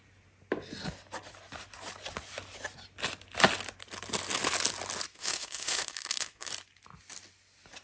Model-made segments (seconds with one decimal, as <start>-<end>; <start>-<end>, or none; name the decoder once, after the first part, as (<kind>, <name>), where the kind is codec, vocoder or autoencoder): 5.1-6.5 (autoencoder, DAC-VAE)